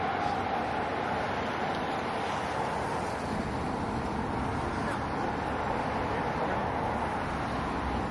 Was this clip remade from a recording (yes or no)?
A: no